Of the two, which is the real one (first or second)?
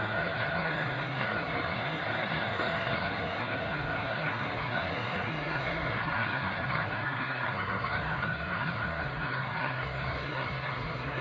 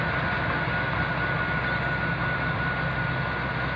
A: second